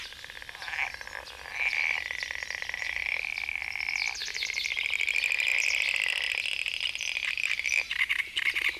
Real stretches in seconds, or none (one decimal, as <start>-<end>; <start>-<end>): 0.0-8.8